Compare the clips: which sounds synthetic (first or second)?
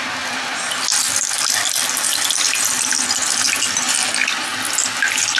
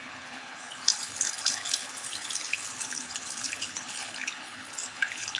second